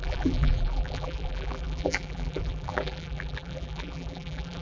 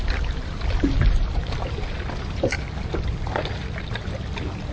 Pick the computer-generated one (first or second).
first